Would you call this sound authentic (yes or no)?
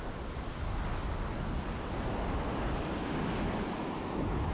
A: yes